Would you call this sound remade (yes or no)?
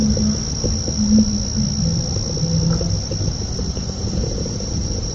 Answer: no